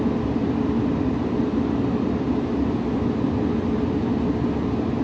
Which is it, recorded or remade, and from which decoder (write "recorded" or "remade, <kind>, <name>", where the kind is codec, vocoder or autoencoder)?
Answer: recorded